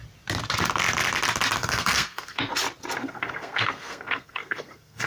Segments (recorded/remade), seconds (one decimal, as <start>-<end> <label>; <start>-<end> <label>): 0.0-1.6 recorded; 1.6-2.4 remade; 2.4-3.0 recorded; 3.0-5.1 remade